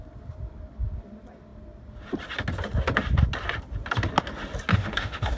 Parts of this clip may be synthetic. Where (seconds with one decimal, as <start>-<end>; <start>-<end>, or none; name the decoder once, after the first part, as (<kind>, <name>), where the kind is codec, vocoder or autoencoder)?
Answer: 4.7-5.4 (autoencoder, DAC-VAE)